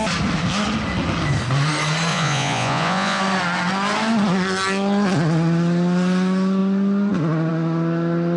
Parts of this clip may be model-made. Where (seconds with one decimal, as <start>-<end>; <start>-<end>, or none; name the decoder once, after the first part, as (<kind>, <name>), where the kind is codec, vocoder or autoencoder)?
2.1-3.2 (vocoder, Vocos)